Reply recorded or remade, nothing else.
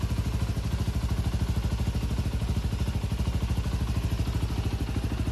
recorded